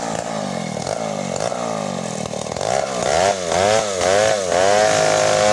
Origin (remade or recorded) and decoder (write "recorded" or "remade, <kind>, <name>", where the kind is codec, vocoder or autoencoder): recorded